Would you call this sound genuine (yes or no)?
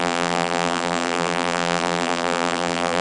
no